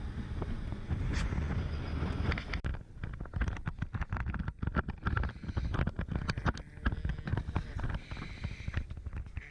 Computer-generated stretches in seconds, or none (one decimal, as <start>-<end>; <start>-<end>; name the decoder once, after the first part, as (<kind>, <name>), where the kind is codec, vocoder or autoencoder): 0.7-2.3 (vocoder, Vocos)